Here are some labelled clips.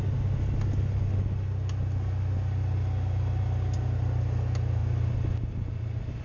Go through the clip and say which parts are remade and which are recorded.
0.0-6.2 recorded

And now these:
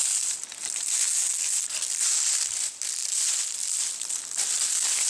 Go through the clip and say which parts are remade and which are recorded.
0.0-5.1 recorded

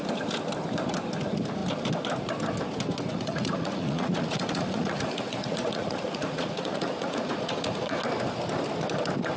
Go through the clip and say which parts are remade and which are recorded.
0.0-3.1 recorded; 3.1-8.0 remade; 8.0-9.4 recorded

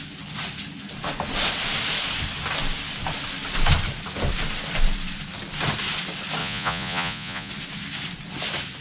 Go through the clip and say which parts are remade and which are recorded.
0.0-6.4 recorded; 6.4-7.5 remade; 7.5-8.8 recorded

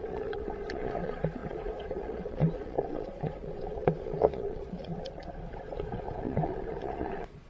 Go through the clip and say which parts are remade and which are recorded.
0.0-7.5 remade

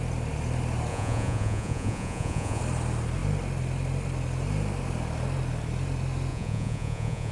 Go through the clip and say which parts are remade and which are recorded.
0.0-0.9 recorded; 0.9-2.6 remade; 2.6-6.3 recorded; 6.3-7.3 remade